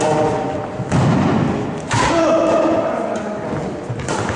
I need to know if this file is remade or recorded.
recorded